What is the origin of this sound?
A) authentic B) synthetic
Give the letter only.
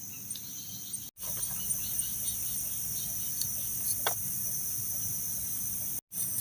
A